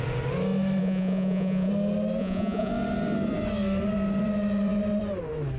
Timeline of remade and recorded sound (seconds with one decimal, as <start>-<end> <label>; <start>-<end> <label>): 0.0-0.8 recorded; 0.8-1.7 remade; 1.7-2.2 recorded; 2.2-2.7 remade; 2.7-5.6 recorded